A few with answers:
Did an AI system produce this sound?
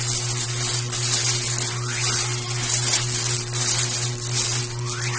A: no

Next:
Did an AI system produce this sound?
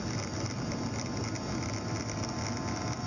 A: no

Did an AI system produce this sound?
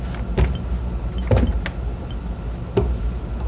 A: no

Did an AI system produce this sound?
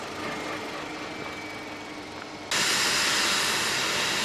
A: no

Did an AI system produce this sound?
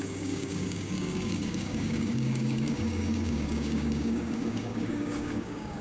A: yes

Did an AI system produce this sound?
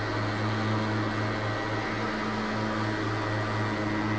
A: no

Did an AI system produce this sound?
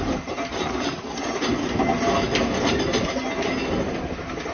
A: no